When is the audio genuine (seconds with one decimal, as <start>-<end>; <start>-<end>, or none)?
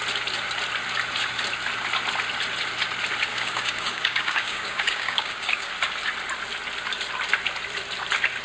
0.0-3.3; 5.7-8.4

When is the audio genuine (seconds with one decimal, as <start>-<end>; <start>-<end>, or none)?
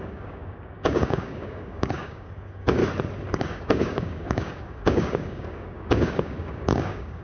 2.8-3.3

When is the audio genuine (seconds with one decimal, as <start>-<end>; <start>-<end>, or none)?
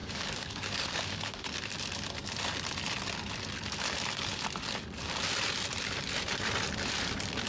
1.6-7.5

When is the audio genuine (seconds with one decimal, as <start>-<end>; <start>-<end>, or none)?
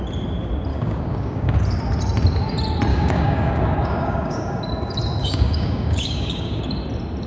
0.0-0.7; 1.6-2.9; 4.6-5.2; 6.6-7.3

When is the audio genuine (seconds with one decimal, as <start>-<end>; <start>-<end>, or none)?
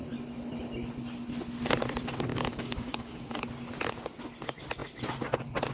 0.0-2.3; 3.4-5.7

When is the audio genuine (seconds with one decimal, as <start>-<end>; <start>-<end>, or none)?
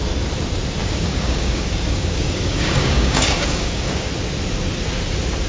0.0-0.8; 4.1-5.5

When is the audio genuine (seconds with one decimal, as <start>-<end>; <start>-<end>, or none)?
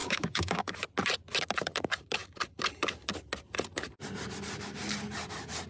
0.7-5.7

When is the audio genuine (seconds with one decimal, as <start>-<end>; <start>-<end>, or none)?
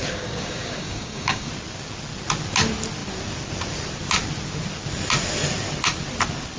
1.5-6.6